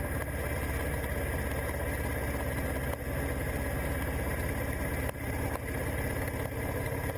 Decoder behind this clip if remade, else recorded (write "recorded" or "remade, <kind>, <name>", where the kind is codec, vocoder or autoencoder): recorded